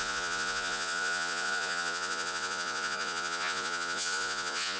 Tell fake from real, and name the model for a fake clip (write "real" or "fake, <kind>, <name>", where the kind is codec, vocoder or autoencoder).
fake, vocoder, Vocos